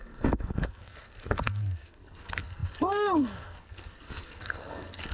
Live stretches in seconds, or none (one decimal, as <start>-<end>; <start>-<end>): none